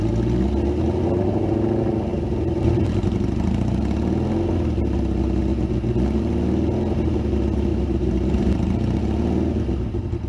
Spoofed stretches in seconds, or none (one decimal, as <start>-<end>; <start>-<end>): 2.1-3.8; 7.7-9.0

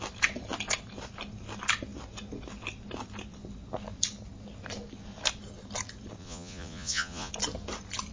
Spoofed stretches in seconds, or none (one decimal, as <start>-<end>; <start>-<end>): 6.2-7.3